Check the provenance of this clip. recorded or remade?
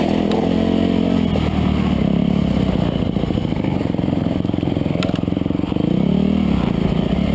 recorded